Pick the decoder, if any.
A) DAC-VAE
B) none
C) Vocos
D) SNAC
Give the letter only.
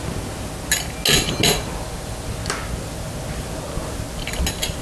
B